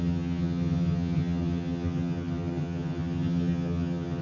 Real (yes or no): no